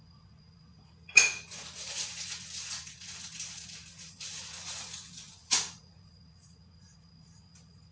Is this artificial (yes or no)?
yes